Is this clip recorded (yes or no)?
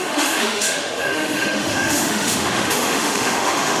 no